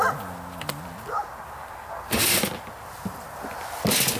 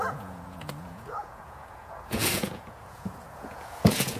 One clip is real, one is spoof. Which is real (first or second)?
first